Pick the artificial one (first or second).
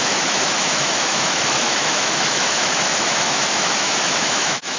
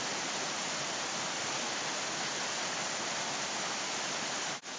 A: first